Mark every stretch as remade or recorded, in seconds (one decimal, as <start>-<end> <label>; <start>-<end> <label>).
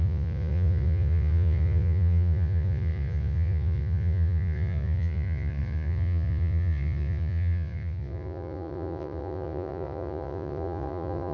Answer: 0.0-11.3 remade